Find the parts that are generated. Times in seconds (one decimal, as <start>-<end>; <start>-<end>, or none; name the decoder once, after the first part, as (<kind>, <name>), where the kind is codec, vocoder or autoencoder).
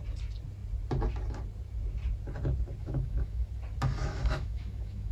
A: 2.8-3.5 (autoencoder, DAC-VAE); 4.0-5.1